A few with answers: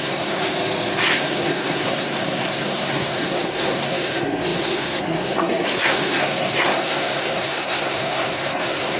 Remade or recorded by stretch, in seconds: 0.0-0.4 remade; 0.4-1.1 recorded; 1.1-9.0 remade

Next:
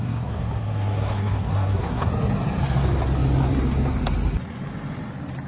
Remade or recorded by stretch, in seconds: 0.0-2.1 remade; 2.1-5.5 recorded